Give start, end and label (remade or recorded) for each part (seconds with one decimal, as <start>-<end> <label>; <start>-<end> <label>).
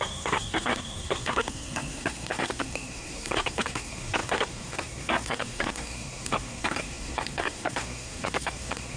0.0-9.0 remade